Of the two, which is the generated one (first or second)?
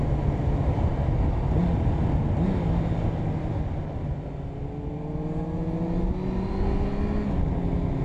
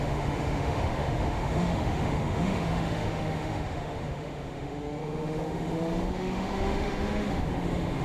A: second